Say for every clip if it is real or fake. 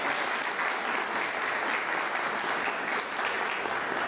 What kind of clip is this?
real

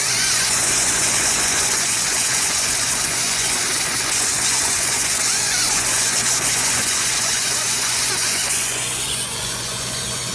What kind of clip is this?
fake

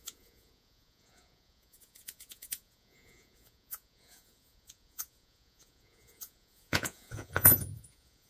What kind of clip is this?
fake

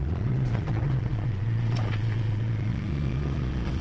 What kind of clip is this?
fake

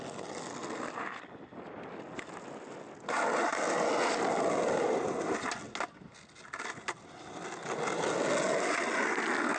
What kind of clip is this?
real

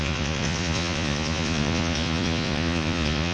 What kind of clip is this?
fake